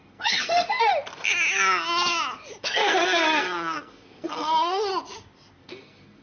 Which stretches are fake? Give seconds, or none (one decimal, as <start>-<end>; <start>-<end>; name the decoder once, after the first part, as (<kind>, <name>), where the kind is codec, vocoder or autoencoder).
0.0-0.9 (codec, SNAC); 2.6-4.9; 5.6-6.2